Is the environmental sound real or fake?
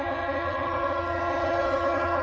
fake